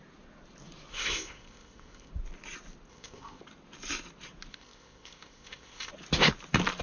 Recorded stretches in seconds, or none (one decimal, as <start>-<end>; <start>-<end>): 0.0-0.9; 2.1-2.9; 3.4-4.5; 5.9-6.8